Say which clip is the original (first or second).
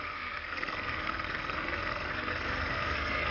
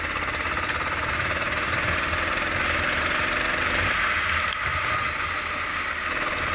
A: second